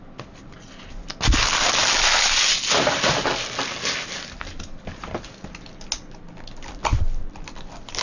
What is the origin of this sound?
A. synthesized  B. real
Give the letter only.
B